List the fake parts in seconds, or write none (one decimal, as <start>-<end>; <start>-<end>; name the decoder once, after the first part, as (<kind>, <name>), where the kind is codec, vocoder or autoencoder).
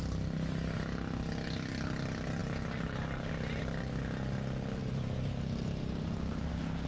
4.8-6.5 (vocoder, BigVGAN v2)